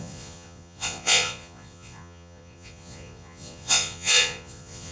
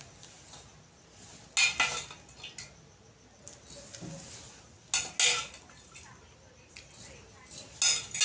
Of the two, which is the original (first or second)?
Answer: second